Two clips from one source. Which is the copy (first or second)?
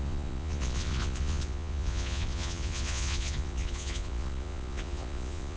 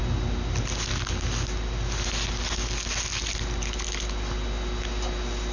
first